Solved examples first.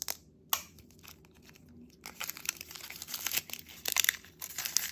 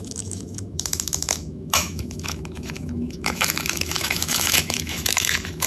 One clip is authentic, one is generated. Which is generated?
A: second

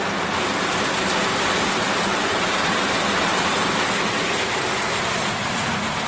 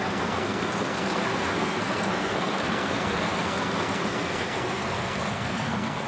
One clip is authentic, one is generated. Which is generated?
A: second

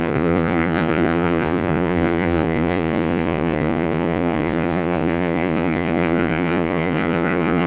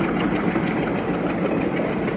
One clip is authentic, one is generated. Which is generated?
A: first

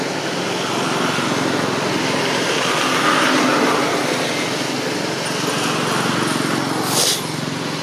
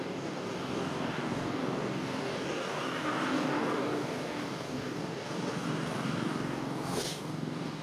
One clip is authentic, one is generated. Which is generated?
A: second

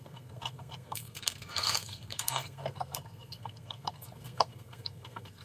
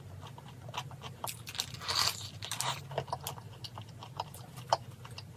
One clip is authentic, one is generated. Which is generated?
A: first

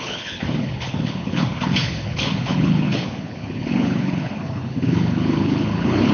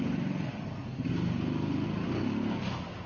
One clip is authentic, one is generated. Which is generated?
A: first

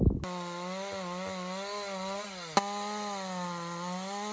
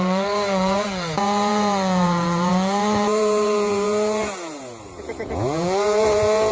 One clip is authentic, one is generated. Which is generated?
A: second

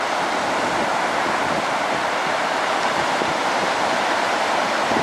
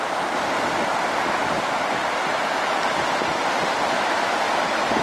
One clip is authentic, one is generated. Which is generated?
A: first